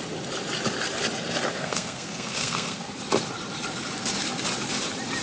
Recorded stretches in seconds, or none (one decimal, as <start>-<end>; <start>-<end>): 0.0-1.5; 2.9-5.2